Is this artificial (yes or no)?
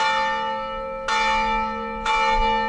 no